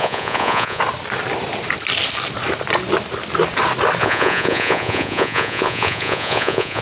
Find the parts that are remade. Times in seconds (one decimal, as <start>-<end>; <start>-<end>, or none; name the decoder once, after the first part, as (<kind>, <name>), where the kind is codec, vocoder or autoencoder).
0.0-0.8 (vocoder, Vocos); 4.0-6.8